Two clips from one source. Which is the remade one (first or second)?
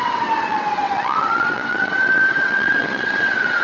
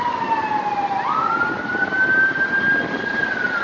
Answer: first